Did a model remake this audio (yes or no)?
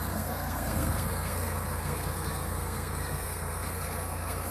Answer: yes